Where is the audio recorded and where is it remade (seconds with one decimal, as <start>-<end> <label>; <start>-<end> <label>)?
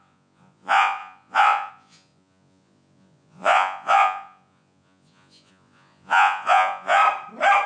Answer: 0.0-7.0 remade; 7.0-7.7 recorded